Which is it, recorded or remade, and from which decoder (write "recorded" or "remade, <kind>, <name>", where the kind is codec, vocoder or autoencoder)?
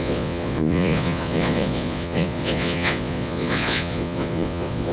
remade, vocoder, Vocos